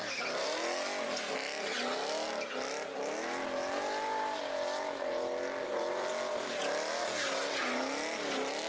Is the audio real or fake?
real